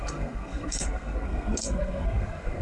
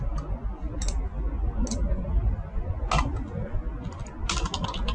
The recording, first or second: second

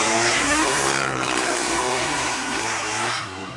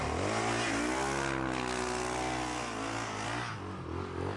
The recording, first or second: second